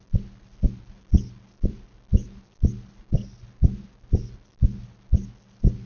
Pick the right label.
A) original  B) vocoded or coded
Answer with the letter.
A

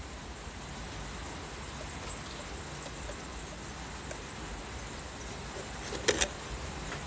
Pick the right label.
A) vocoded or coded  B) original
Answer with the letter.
B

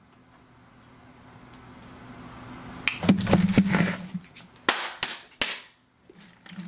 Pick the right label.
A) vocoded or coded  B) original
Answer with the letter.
B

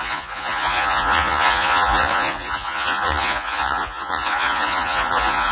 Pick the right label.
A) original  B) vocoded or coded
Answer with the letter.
B